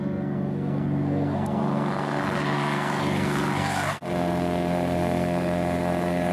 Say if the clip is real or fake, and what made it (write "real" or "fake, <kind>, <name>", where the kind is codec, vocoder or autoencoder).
fake, codec, SNAC